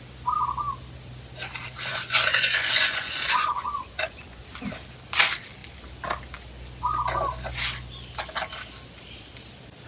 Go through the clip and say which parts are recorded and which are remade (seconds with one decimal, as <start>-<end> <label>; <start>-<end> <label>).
0.0-1.9 recorded; 1.9-4.4 remade; 4.4-9.9 recorded